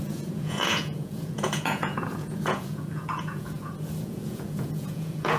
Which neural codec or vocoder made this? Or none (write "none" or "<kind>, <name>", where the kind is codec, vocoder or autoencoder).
vocoder, Vocos